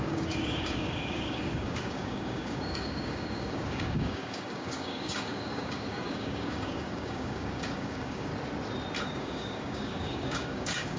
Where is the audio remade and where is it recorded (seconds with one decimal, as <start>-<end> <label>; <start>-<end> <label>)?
0.0-8.3 remade; 8.3-9.0 recorded; 9.0-11.0 remade